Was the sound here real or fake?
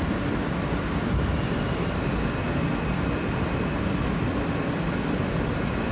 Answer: real